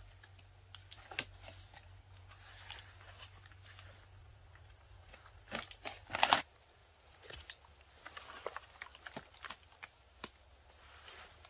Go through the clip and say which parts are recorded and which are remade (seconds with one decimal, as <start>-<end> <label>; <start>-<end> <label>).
0.0-4.2 recorded; 4.2-5.4 remade; 5.4-6.8 recorded; 6.8-7.5 remade; 7.5-11.5 recorded